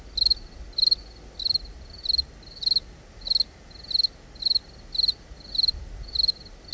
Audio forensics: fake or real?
real